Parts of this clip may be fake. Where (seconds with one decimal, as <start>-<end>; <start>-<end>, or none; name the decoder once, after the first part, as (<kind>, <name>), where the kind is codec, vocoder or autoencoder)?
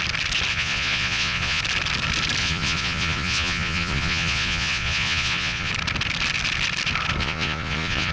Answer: 0.5-1.6 (vocoder, Vocos); 2.4-5.7; 7.2-8.1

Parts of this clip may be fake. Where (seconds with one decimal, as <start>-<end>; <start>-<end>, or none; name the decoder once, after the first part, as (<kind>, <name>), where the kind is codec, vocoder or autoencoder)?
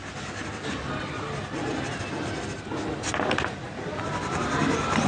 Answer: none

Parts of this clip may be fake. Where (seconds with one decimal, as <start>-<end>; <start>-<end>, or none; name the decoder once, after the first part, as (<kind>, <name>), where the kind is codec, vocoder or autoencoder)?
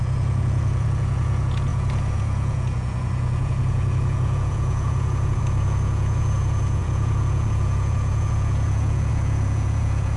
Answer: 0.0-10.2 (vocoder, Vocos)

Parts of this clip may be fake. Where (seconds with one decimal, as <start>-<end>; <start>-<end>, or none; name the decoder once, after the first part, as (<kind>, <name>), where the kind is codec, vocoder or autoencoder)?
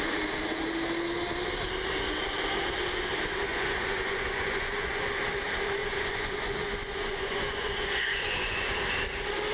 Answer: 3.5-5.0 (vocoder, Vocos); 5.8-8.7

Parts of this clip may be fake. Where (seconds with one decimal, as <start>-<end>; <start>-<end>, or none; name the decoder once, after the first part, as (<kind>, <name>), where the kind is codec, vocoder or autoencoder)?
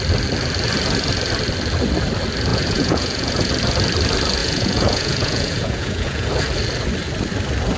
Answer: 2.5-3.5 (vocoder, Vocos); 4.4-6.3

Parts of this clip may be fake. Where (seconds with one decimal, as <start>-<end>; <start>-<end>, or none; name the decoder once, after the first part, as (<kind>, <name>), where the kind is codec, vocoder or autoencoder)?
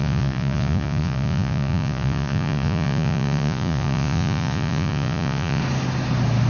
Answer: 0.0-5.6 (vocoder, Vocos)